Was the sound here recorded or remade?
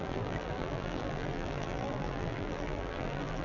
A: remade